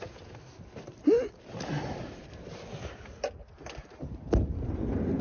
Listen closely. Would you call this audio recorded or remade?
recorded